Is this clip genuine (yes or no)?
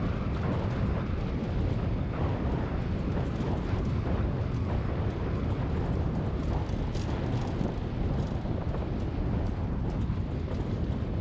yes